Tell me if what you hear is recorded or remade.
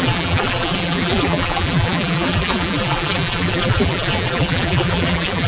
remade